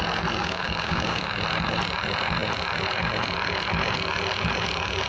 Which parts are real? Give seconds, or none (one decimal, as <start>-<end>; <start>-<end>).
0.0-0.4; 1.3-5.1